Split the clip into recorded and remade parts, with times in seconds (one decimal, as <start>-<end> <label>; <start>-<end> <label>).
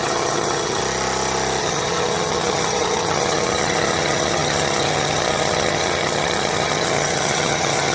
0.0-0.8 remade; 0.8-1.6 recorded; 1.6-7.9 remade